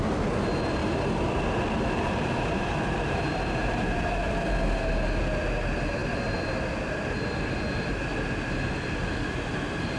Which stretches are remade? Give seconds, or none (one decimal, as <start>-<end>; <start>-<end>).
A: 0.8-4.3